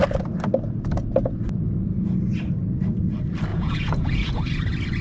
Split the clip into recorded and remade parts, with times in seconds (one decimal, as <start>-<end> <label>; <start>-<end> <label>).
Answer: 0.0-3.5 recorded; 3.5-4.3 remade; 4.3-5.0 recorded